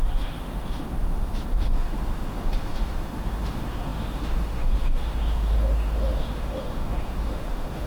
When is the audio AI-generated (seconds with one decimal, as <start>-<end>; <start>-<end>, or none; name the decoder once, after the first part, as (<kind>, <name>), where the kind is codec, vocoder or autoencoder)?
0.0-7.9 (autoencoder, DAC-VAE)